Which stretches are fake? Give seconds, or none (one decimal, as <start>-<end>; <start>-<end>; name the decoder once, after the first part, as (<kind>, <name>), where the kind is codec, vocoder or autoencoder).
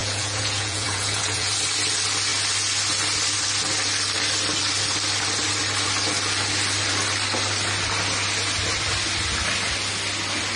0.0-1.5 (vocoder, Vocos)